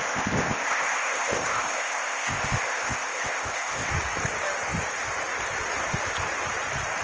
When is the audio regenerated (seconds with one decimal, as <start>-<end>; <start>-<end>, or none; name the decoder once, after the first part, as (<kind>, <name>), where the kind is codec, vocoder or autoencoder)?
0.0-3.9 (codec, ZipCodec)